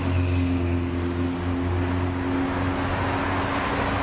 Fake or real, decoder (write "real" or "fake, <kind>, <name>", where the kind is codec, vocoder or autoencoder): real